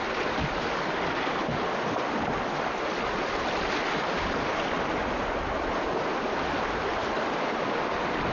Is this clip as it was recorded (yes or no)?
yes